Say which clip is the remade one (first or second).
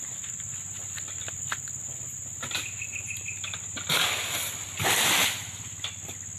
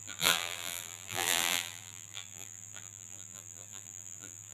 second